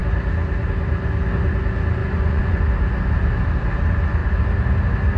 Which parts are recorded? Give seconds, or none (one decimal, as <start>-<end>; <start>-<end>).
0.0-2.0; 2.6-5.2